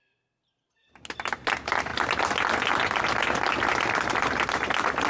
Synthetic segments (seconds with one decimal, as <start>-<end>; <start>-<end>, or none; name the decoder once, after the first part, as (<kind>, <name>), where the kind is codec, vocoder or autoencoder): none